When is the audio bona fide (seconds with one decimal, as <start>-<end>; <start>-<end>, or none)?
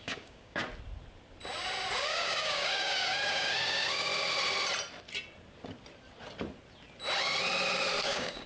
0.6-1.9; 4.1-8.0